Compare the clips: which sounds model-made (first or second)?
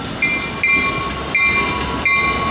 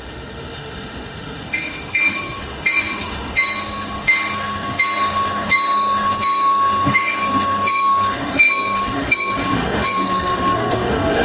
second